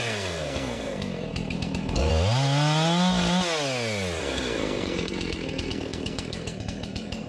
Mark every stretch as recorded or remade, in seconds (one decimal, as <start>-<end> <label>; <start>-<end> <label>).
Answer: 0.0-2.1 remade; 2.1-4.2 recorded; 4.2-7.3 remade